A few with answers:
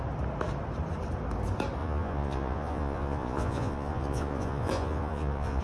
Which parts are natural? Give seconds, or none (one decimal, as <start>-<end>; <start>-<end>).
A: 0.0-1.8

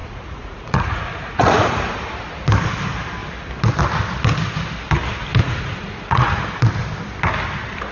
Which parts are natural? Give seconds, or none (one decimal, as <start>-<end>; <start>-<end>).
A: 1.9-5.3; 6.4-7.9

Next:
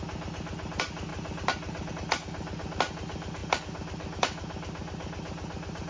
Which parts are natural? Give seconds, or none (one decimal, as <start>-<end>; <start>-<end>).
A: 0.0-5.9